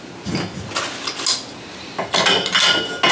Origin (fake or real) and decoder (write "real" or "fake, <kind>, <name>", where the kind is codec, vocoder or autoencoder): real